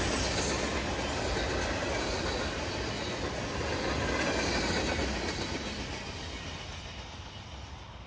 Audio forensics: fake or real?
real